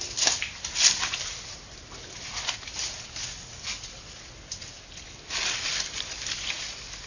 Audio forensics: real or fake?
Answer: real